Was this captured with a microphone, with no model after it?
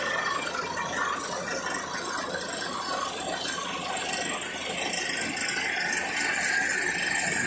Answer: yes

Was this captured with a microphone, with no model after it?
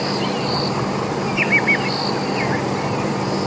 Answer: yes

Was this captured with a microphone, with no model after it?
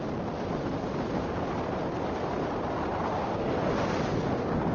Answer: yes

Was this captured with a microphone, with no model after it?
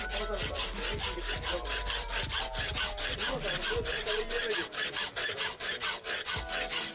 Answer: yes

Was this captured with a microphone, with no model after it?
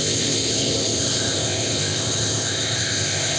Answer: no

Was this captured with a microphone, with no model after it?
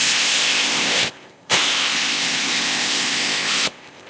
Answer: no